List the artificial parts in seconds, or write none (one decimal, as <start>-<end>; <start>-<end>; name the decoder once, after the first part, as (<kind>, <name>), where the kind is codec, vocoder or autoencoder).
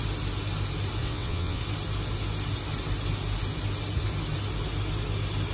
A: 1.0-1.6 (vocoder, WaveNeXt)